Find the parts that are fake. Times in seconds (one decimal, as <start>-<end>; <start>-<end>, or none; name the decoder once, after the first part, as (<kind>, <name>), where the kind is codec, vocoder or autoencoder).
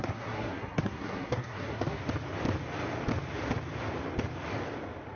0.0-2.0 (codec, SNAC)